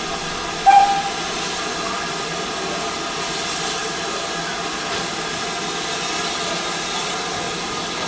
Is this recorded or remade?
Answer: recorded